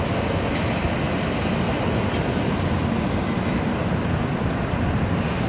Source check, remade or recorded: recorded